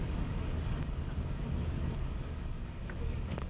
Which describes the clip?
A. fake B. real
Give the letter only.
A